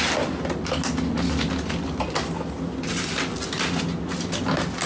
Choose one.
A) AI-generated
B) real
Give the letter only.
B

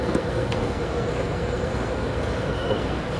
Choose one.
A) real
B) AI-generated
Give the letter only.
B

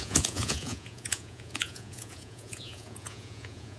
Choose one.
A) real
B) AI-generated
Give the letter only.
B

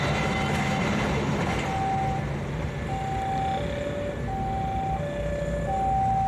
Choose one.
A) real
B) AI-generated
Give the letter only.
A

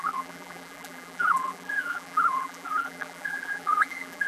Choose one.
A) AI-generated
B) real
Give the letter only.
A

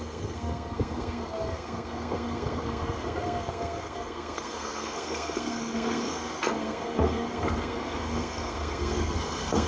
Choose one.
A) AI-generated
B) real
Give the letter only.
A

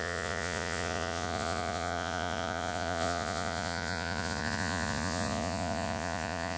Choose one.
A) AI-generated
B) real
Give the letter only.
A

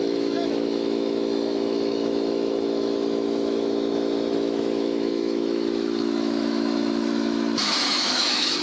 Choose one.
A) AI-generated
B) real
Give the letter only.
A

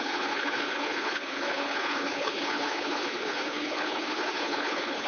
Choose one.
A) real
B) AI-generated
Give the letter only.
B